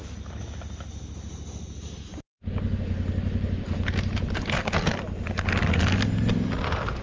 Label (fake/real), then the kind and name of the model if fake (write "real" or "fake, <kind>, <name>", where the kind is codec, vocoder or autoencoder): real